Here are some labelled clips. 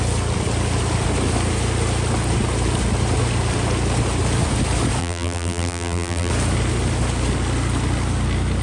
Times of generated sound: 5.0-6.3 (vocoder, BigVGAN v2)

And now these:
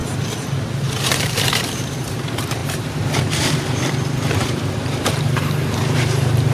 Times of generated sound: 1.1-6.5 (vocoder, BigVGAN v2)